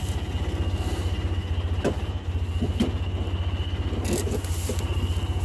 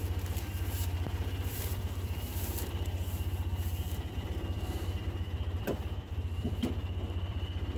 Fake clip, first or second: second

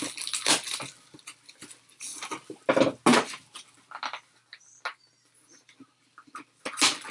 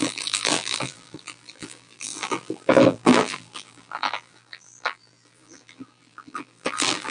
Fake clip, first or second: second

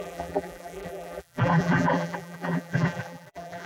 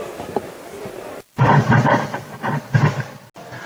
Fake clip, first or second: first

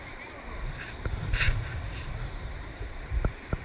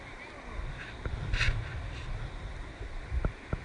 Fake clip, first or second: first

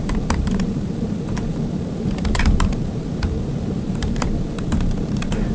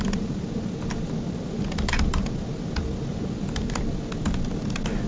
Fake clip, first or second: first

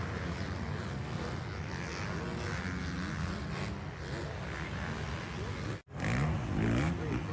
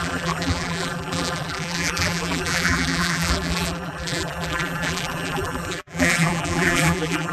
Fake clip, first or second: second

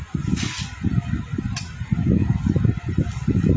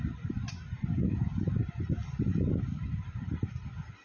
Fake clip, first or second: second